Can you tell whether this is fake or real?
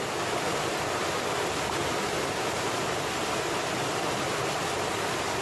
real